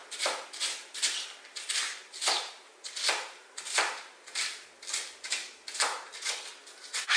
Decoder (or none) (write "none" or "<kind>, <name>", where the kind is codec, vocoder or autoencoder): none